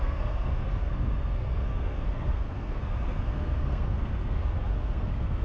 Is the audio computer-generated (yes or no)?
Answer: yes